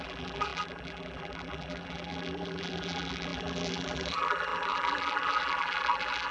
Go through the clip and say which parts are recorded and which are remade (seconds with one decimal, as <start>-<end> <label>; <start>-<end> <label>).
0.0-6.3 remade